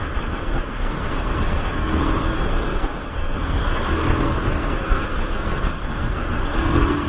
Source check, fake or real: fake